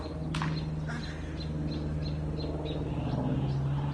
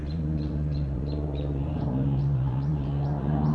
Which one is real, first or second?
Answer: first